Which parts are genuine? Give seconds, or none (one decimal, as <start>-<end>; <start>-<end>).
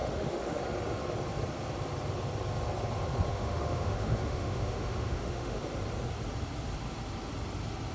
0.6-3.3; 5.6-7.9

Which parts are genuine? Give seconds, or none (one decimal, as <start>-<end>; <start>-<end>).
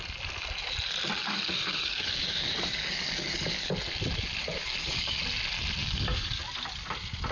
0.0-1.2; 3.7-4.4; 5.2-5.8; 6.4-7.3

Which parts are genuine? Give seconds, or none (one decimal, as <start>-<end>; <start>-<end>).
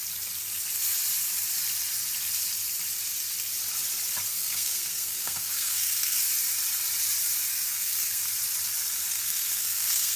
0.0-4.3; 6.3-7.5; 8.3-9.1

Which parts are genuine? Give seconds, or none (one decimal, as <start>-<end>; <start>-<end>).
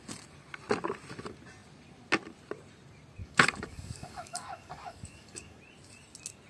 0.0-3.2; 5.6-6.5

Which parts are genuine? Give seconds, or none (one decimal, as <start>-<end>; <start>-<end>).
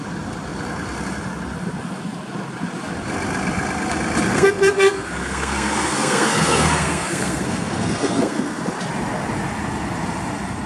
0.0-4.3; 8.6-10.7